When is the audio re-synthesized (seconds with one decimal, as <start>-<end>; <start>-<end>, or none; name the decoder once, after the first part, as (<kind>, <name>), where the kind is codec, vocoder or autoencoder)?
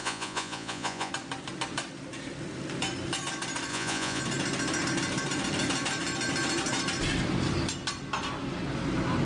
0.0-1.1 (vocoder, Vocos); 3.7-4.2